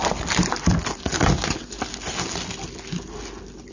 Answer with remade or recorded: recorded